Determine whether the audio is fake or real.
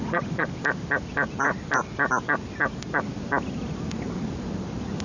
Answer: real